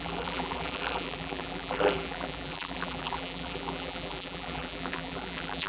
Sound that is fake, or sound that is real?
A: fake